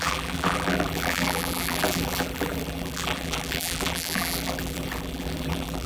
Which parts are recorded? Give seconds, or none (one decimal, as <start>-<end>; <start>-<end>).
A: none